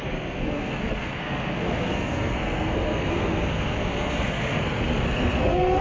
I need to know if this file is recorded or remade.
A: remade